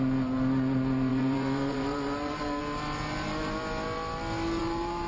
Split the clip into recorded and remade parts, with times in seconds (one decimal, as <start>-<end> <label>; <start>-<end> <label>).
0.0-1.1 recorded; 1.1-2.6 remade; 2.6-4.6 recorded; 4.6-5.1 remade